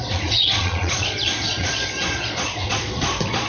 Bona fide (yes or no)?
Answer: no